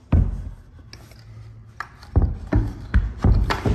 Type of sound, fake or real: real